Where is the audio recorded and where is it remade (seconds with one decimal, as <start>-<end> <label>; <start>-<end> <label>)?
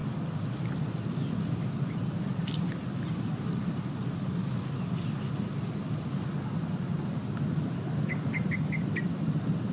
0.0-9.7 recorded